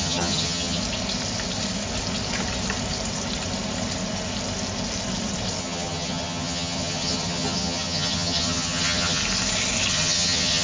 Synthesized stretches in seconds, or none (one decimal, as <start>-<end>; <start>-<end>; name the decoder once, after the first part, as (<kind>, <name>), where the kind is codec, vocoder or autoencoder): 0.0-0.8 (vocoder, HiFi-GAN); 5.6-9.2; 9.9-10.6